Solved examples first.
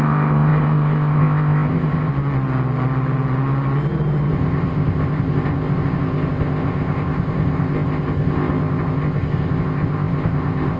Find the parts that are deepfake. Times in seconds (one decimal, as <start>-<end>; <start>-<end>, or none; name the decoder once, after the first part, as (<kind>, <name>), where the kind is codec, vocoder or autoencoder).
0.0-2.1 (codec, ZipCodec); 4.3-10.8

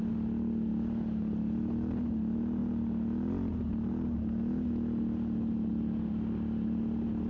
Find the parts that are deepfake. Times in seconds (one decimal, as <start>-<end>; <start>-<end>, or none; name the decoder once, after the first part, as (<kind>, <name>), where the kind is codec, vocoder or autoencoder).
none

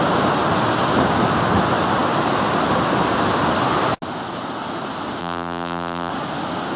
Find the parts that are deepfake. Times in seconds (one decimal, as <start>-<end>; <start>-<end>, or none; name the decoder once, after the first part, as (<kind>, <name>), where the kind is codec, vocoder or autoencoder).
5.2-6.1 (vocoder, BigVGAN v2)

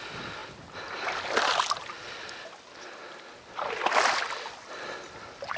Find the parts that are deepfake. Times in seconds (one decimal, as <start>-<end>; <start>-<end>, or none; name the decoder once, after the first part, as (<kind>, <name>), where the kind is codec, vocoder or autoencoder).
none

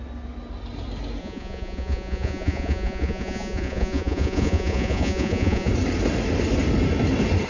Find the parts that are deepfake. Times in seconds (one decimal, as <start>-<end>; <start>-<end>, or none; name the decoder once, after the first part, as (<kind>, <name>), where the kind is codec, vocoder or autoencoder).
1.2-5.7 (vocoder, Vocos)